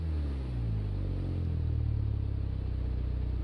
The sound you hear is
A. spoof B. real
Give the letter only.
B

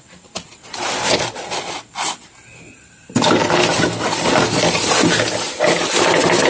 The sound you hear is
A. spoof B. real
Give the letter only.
B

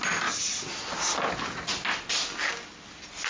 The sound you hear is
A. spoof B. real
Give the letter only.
B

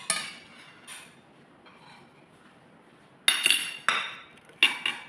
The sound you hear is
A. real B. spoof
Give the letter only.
A